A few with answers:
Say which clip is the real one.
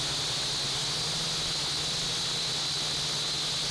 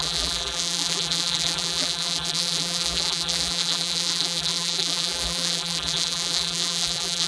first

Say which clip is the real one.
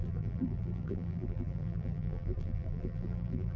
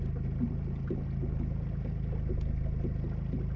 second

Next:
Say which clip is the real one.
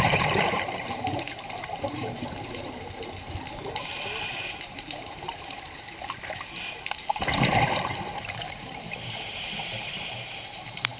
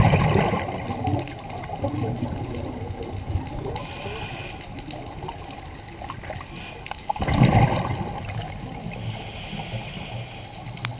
second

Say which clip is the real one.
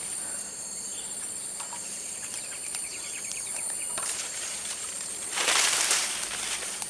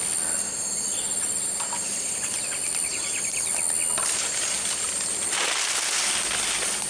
second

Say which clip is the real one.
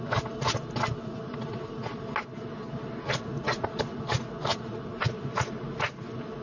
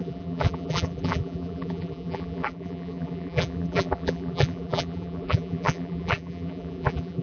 first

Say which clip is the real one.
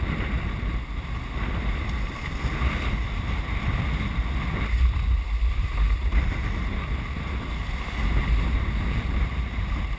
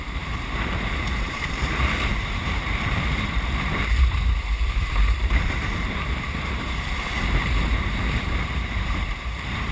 first